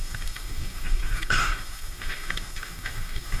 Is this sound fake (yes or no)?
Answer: yes